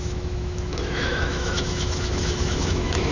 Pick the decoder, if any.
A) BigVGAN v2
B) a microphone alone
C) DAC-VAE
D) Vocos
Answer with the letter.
C